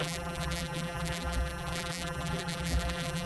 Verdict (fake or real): fake